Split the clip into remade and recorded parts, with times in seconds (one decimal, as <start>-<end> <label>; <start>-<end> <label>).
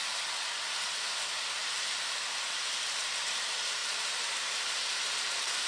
0.0-1.6 recorded; 1.6-2.9 remade; 2.9-3.8 recorded; 3.8-5.7 remade